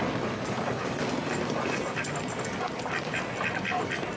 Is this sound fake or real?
real